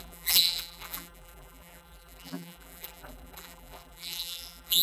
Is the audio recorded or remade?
remade